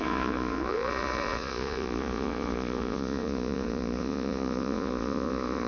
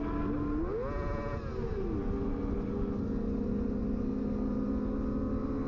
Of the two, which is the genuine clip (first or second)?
second